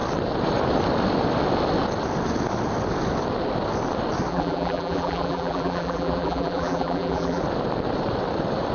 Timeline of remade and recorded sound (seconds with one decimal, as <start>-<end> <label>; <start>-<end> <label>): 0.0-4.3 recorded; 4.3-7.4 remade; 7.4-8.7 recorded